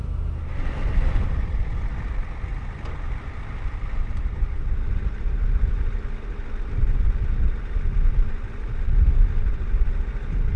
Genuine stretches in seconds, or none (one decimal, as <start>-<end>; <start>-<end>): 0.0-10.6